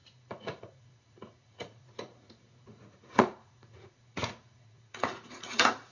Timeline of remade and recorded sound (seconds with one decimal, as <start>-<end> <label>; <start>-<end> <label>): 0.0-5.9 remade

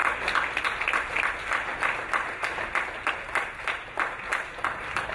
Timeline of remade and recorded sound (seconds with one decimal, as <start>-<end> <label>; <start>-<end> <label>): 0.0-4.3 recorded; 4.3-5.1 remade

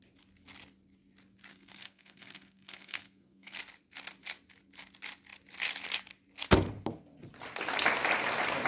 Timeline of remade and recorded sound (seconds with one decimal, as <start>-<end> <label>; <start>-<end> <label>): 0.0-1.5 recorded; 1.5-3.6 remade; 3.6-8.7 recorded